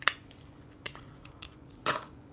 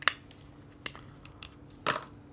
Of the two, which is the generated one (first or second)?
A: first